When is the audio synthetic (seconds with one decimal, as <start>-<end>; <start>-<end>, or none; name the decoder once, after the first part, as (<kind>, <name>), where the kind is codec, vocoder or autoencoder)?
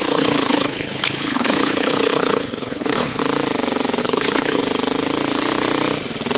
0.0-3.2 (codec, HILCodec); 4.0-4.6